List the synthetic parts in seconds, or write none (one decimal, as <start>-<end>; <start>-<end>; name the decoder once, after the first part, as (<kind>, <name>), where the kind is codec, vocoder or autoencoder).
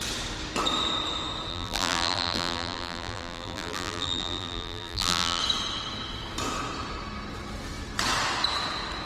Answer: 1.5-5.4 (vocoder, BigVGAN v2)